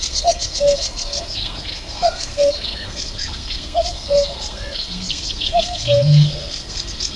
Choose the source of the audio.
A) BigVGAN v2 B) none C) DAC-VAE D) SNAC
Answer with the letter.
D